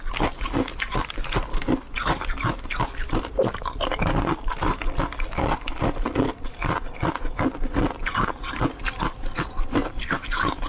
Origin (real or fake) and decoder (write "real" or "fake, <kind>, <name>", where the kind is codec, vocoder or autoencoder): real